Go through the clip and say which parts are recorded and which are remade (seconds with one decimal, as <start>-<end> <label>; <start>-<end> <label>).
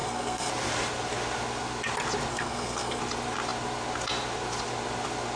0.0-0.5 remade; 0.5-2.3 recorded; 2.3-3.0 remade; 3.0-5.4 recorded